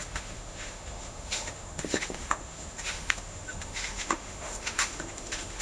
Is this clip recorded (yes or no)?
no